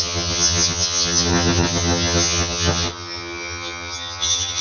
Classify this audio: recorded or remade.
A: remade